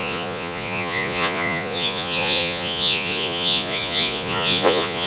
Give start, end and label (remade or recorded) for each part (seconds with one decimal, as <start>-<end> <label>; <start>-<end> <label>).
0.0-5.1 remade